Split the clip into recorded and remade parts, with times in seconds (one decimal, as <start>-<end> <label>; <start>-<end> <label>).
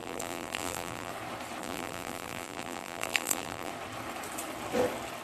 0.0-1.1 remade; 1.1-1.6 recorded; 1.6-3.7 remade; 3.7-5.2 recorded